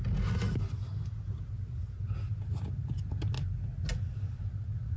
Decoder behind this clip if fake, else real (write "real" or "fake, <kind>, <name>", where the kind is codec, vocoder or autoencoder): real